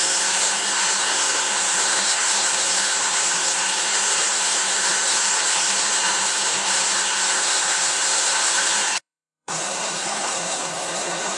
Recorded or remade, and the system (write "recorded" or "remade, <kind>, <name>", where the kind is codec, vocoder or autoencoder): remade, codec, SNAC